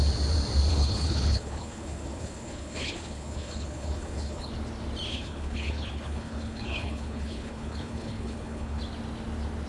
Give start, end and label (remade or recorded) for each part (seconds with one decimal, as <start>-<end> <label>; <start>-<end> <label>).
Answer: 0.0-0.7 recorded; 0.7-4.5 remade; 4.5-5.1 recorded; 5.1-8.8 remade; 8.8-9.7 recorded